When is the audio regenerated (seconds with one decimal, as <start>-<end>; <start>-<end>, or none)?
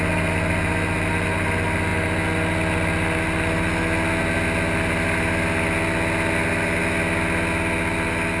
none